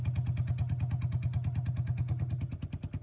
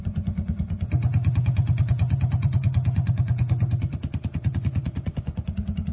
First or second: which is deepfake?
second